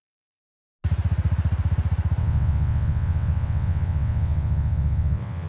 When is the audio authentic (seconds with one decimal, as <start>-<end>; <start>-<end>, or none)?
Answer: 0.4-2.2